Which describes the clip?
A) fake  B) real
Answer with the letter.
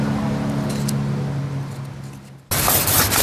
B